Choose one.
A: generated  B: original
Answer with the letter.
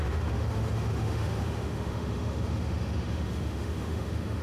A